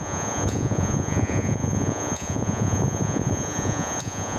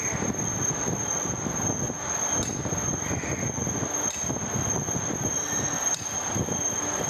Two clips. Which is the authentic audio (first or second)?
second